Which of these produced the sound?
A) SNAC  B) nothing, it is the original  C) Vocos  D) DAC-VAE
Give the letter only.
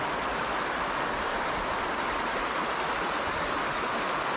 B